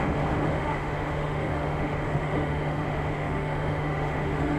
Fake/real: fake